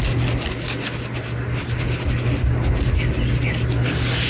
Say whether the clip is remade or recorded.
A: recorded